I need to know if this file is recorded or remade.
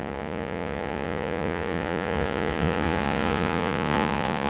remade